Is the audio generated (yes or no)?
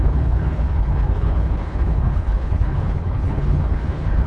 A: yes